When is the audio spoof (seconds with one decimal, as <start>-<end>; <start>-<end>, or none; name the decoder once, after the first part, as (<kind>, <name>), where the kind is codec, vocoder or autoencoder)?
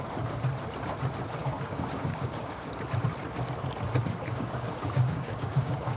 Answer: 1.4-2.7 (codec, DAC); 4.3-6.0